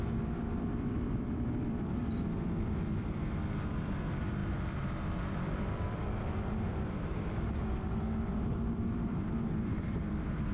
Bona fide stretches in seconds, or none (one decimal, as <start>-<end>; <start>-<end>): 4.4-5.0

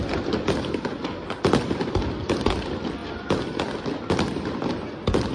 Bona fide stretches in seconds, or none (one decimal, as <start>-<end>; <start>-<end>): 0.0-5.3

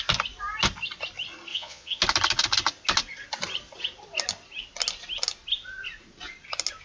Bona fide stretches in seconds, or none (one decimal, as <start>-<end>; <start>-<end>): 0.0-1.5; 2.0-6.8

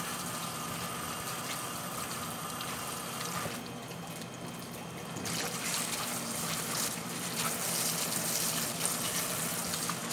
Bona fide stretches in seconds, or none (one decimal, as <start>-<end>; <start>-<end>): 0.0-10.1

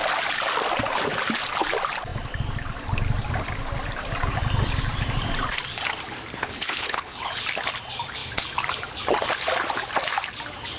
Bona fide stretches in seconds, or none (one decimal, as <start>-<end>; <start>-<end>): 0.0-6.4; 7.3-10.8

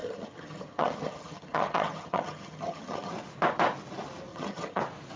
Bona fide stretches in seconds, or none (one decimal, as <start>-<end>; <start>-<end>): 3.1-4.3; 4.8-5.2

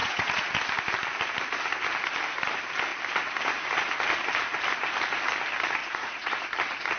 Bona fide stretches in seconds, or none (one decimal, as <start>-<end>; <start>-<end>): 0.5-5.8; 6.4-7.0